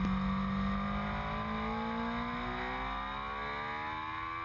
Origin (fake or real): real